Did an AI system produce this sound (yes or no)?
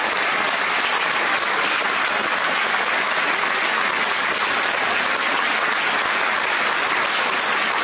no